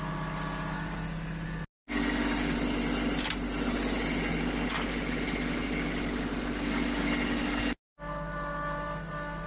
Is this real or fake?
real